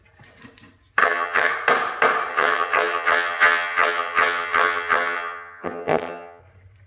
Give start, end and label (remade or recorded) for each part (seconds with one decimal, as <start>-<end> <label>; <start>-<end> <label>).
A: 0.0-1.0 recorded; 1.0-1.5 remade; 1.5-2.3 recorded; 2.3-6.4 remade; 6.4-6.9 recorded